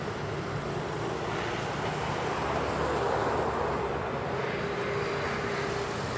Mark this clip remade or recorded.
recorded